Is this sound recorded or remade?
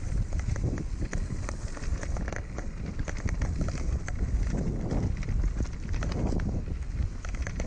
recorded